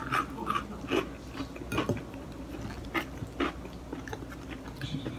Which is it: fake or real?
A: real